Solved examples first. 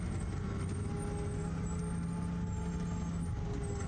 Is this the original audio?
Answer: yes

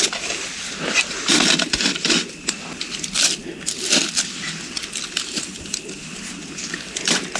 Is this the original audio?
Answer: yes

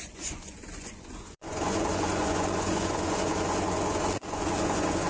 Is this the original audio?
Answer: no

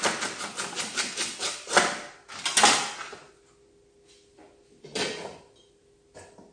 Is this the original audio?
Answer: yes